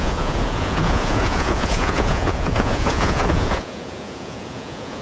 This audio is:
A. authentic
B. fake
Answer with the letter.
B